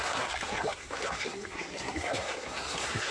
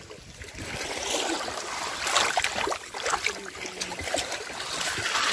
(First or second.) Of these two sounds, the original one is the second